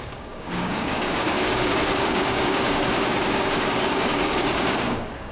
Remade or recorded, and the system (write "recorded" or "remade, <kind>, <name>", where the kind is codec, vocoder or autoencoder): remade, codec, DAC